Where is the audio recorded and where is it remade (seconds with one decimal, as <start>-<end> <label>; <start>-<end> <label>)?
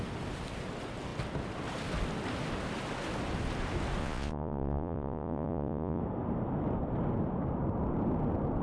0.0-4.0 recorded; 4.0-6.0 remade; 6.0-8.6 recorded